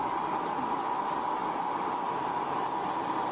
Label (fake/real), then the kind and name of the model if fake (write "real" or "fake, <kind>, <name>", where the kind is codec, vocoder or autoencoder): real